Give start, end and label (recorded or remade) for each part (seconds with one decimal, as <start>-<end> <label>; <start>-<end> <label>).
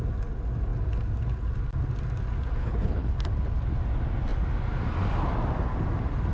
0.0-2.6 recorded; 2.6-3.1 remade; 3.1-6.3 recorded